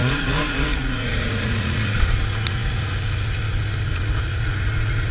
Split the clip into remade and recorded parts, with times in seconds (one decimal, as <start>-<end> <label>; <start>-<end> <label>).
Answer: 0.0-5.1 remade